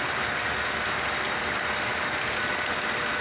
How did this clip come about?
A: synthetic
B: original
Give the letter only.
B